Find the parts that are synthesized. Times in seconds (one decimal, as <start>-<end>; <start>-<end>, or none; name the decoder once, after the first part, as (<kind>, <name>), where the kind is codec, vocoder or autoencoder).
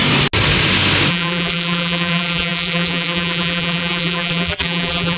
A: 1.1-5.2 (vocoder, BigVGAN v2)